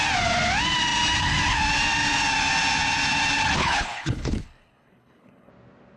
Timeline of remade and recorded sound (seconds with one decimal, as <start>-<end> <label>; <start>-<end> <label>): 0.0-3.6 recorded; 3.6-5.5 remade; 5.5-6.0 recorded